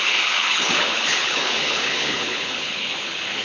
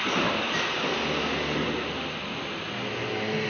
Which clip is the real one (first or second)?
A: second